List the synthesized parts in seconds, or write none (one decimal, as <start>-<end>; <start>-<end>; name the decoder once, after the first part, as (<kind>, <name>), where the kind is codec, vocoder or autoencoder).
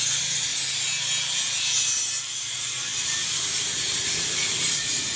0.0-0.5 (vocoder, BigVGAN v2); 2.4-5.2